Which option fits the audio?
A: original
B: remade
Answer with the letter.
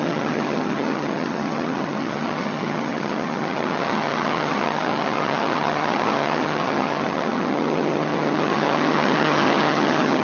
B